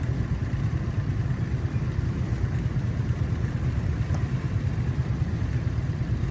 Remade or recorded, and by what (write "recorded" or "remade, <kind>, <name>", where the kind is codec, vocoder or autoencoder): recorded